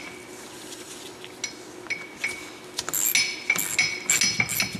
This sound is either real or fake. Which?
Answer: real